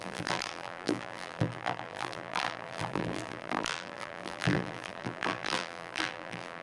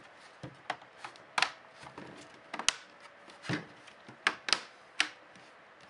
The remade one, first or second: first